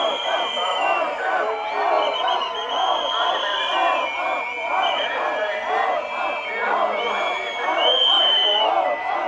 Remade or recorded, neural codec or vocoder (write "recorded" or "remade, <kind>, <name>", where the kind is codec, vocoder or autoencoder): remade, vocoder, BigVGAN v2